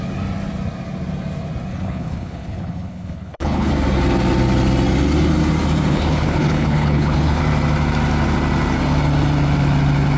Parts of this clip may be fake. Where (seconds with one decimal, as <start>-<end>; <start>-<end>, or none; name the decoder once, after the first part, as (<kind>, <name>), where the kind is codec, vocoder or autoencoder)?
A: 1.7-3.7 (codec, HILCodec); 5.9-7.4